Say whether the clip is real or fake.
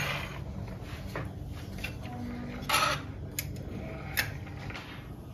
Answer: real